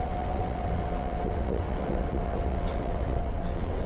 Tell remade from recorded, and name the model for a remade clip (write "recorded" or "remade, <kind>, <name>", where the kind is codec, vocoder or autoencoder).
remade, vocoder, WaveNeXt